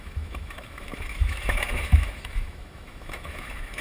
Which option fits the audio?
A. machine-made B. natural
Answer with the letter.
A